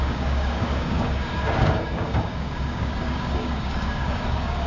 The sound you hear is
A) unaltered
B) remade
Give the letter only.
B